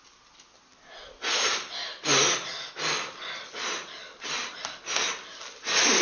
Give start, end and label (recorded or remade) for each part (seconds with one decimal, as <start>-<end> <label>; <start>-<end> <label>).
0.0-6.0 recorded